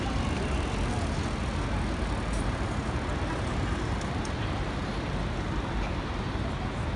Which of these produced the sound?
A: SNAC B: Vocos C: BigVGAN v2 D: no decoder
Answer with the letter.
D